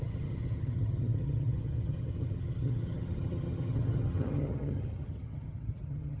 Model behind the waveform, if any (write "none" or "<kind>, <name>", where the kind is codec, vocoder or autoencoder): vocoder, HiFi-GAN